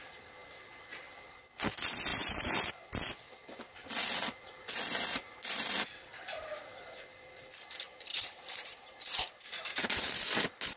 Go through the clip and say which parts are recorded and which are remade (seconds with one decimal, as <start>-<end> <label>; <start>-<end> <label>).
0.0-2.1 recorded; 2.1-2.7 remade; 2.7-6.1 recorded; 6.1-6.6 remade; 6.6-8.1 recorded; 8.1-10.2 remade; 10.2-10.8 recorded